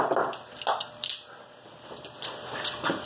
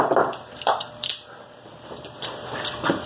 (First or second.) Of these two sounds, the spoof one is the second